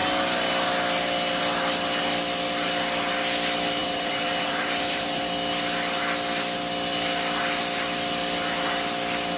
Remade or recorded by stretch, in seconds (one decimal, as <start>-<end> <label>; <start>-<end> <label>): 0.0-3.8 recorded; 3.8-5.3 remade; 5.3-9.4 recorded